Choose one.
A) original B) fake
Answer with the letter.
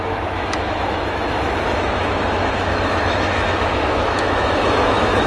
B